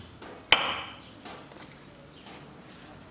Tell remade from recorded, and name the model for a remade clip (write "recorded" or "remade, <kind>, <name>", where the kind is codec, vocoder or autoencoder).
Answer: recorded